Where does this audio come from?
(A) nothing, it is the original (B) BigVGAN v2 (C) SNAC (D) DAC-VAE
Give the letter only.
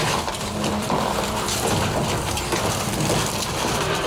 B